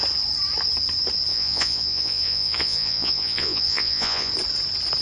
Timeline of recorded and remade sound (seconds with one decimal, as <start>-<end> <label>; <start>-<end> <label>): 0.0-1.3 recorded; 1.3-4.3 remade; 4.3-5.0 recorded